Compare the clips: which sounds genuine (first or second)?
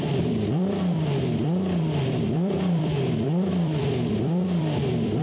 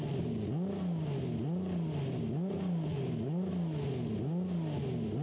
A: second